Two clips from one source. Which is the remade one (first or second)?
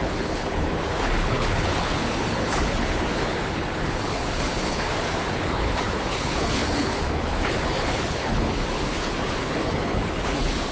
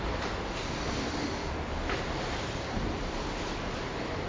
first